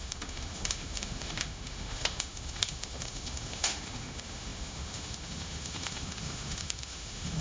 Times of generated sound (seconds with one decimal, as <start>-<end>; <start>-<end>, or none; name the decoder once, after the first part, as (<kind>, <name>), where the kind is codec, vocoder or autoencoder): 0.0-7.4 (autoencoder, DAC-VAE)